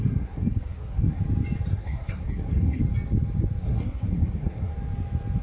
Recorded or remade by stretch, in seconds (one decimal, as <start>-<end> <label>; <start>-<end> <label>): 0.0-1.2 remade; 1.2-1.7 recorded; 1.7-2.8 remade; 2.8-3.6 recorded; 3.6-4.7 remade; 4.7-5.4 recorded